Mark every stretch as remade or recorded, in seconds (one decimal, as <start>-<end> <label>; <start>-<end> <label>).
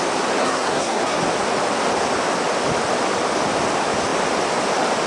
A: 0.0-0.4 recorded; 0.4-1.2 remade; 1.2-5.1 recorded